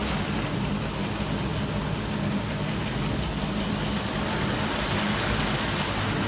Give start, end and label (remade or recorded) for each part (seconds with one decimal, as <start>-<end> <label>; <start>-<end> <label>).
0.0-6.3 recorded